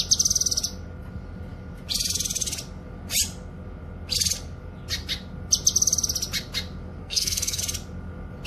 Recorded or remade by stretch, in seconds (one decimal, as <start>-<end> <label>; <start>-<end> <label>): 0.0-7.0 recorded; 7.0-7.6 remade; 7.6-8.5 recorded